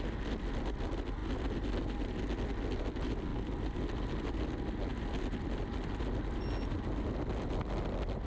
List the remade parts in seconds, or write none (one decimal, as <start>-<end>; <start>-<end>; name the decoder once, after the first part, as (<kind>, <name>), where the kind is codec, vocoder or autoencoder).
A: none